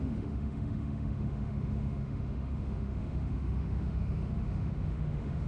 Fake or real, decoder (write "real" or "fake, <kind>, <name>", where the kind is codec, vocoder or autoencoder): fake, autoencoder, DAC-VAE